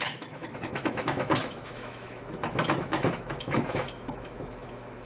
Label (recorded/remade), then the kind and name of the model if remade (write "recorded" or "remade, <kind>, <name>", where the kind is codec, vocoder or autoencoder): remade, autoencoder, DAC-VAE